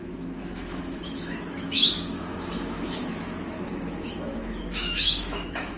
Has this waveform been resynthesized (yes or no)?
yes